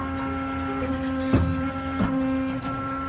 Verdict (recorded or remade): recorded